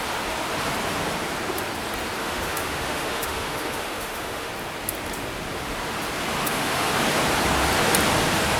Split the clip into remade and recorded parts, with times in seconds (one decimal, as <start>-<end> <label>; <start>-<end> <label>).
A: 0.0-2.2 recorded; 2.2-4.5 remade; 4.5-6.4 recorded; 6.4-6.9 remade; 6.9-8.6 recorded